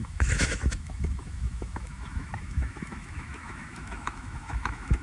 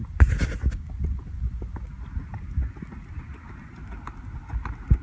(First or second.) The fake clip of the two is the first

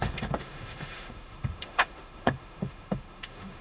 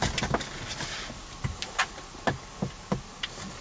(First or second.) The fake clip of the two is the first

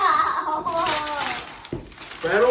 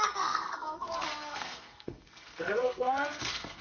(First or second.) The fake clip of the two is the second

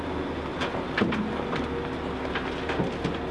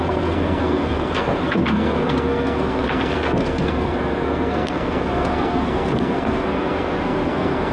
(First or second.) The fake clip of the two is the second